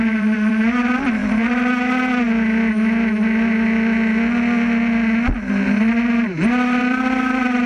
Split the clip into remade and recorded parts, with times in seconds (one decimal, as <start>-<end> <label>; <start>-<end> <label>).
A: 0.0-1.2 remade; 1.2-5.5 recorded; 5.5-7.7 remade